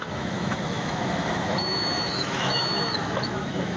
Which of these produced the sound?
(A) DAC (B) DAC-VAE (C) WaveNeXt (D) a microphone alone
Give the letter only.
B